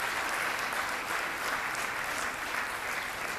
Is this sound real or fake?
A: fake